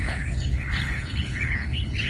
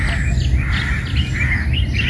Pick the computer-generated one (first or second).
first